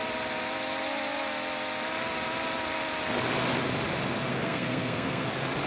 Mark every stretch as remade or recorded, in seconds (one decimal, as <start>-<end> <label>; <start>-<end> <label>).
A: 0.0-4.3 recorded; 4.3-5.3 remade; 5.3-5.7 recorded